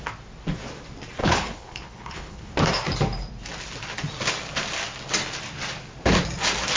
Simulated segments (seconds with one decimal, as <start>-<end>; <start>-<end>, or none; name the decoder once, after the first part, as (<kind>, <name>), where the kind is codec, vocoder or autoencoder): 1.2-2.5 (codec, HILCodec)